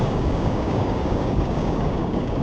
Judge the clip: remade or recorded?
remade